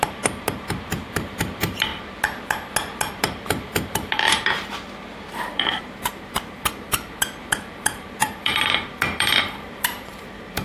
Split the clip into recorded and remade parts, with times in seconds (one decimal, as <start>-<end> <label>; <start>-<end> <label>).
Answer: 0.0-1.9 remade; 1.9-3.1 recorded; 3.1-4.7 remade; 4.7-5.3 recorded; 5.3-10.6 remade